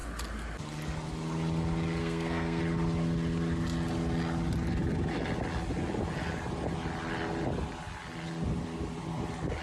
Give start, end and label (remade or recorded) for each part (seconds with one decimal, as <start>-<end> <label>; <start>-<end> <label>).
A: 0.0-2.0 recorded; 2.0-2.6 remade; 2.6-9.6 recorded